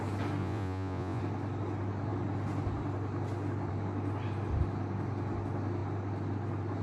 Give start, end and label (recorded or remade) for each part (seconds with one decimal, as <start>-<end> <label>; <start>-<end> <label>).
0.0-0.4 recorded; 0.4-1.2 remade; 1.2-6.8 recorded